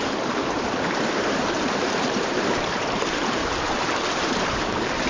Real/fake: fake